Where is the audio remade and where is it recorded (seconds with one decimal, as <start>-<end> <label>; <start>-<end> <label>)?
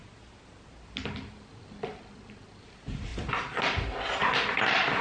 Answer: 0.0-5.0 recorded